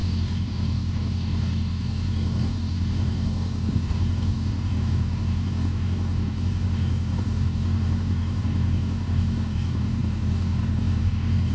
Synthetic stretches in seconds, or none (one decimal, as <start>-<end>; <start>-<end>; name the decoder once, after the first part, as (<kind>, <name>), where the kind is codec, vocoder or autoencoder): 0.0-11.5 (codec, DAC)